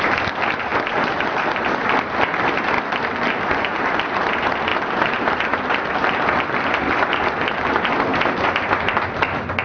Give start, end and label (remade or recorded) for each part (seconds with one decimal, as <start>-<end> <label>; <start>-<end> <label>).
0.0-9.6 recorded